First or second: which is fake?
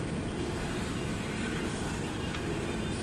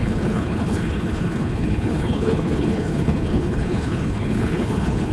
second